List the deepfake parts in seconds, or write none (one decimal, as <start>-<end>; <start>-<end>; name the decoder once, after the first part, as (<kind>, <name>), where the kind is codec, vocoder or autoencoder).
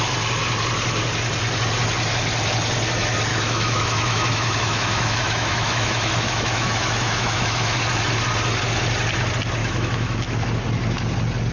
3.3-7.8 (autoencoder, DAC-VAE); 9.6-10.5